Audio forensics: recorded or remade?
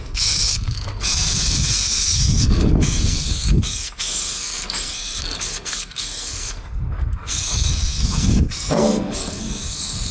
remade